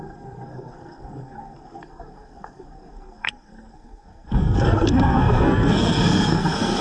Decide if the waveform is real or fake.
fake